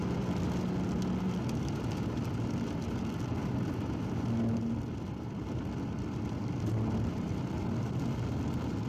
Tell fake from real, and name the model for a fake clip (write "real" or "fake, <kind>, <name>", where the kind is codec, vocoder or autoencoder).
real